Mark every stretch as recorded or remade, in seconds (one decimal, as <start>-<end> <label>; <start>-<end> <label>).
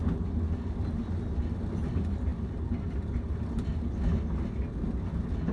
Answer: 0.0-5.5 recorded